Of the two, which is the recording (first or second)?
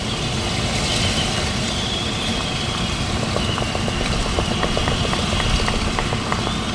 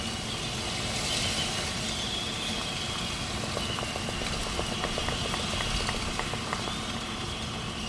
second